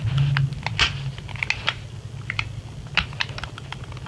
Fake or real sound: real